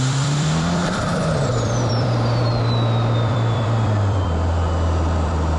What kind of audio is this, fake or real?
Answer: fake